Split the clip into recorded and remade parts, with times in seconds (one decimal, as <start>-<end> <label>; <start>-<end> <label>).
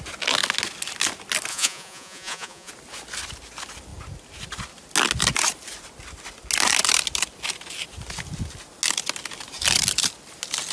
0.0-1.5 recorded; 1.5-2.7 remade; 2.7-10.7 recorded